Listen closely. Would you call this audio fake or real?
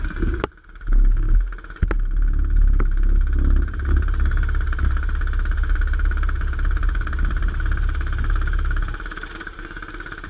real